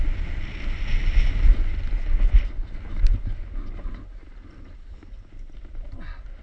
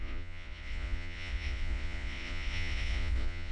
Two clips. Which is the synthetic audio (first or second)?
second